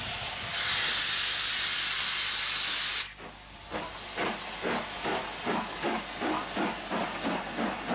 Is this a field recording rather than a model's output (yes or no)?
yes